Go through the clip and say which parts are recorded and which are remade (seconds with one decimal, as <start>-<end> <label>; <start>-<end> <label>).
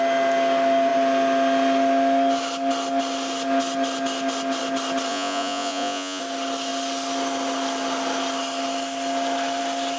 0.0-5.1 recorded; 5.1-6.2 remade; 6.2-10.0 recorded